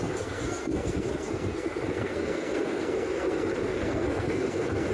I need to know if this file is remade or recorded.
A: remade